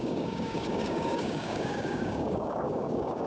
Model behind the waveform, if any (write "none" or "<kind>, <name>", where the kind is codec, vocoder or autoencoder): codec, DAC